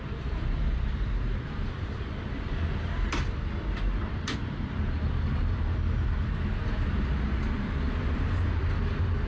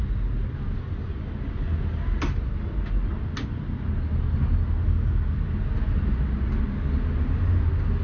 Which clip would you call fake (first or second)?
first